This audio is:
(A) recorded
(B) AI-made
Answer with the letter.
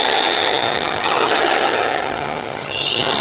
B